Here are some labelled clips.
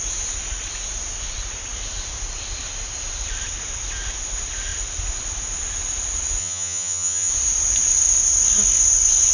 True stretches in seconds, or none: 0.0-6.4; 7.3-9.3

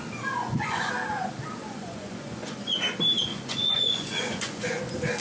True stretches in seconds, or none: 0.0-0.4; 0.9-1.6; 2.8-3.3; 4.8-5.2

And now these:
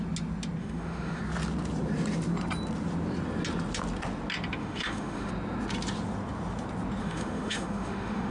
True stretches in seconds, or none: 0.0-0.6; 1.2-4.6; 5.3-7.0

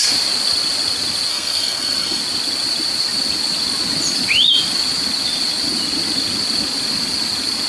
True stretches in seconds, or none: 0.0-1.3; 2.2-7.7

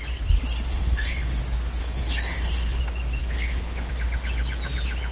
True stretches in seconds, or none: 0.0-0.7; 1.4-1.8; 2.8-3.2; 3.9-5.1

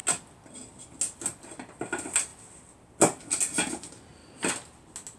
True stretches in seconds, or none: 0.0-5.2

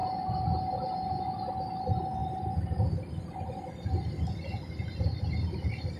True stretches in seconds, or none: 1.5-6.0

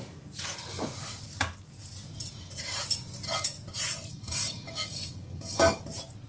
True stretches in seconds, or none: 0.0-4.1; 5.8-6.3